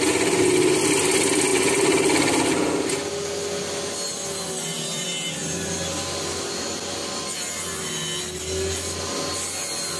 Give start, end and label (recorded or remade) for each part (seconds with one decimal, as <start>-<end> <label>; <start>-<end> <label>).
0.0-10.0 recorded